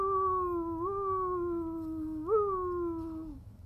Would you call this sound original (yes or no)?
yes